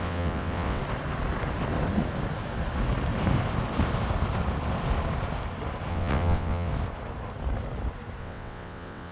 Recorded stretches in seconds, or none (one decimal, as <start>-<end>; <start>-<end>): 0.8-5.9; 6.7-8.2